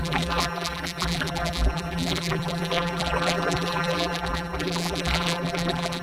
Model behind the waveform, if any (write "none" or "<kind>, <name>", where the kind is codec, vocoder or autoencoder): vocoder, BigVGAN v2